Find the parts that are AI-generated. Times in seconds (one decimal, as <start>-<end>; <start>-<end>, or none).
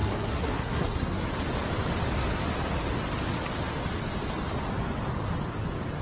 0.0-1.2